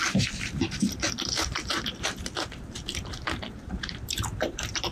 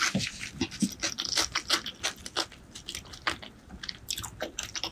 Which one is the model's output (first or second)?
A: first